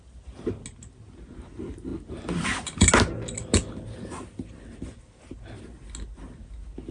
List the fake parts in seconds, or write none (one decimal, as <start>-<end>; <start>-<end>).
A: none

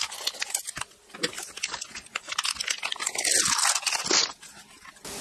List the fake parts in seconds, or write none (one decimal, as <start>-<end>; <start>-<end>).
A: none

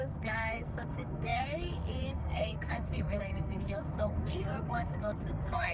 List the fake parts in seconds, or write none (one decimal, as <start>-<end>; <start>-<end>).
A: 0.0-5.7

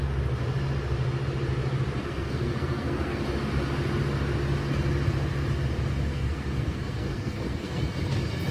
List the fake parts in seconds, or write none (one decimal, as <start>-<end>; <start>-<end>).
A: 2.0-3.2; 6.1-7.8

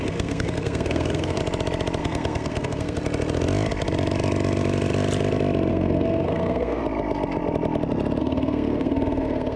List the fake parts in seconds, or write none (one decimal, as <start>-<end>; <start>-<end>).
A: 0.0-1.4; 2.0-3.0; 5.7-6.8; 8.2-9.6